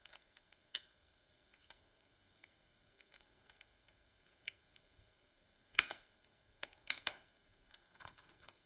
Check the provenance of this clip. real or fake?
fake